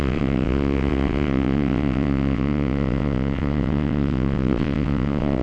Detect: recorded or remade remade